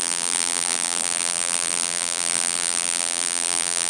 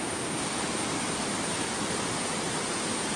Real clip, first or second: second